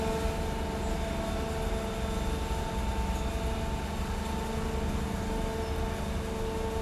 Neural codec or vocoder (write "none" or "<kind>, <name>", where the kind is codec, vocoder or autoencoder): none